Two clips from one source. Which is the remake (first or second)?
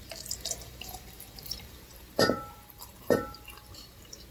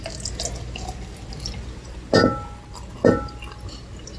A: first